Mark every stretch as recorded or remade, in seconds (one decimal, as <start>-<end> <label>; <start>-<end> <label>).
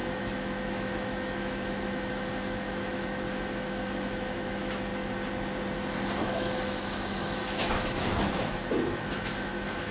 0.0-4.9 remade; 4.9-6.2 recorded; 6.2-9.9 remade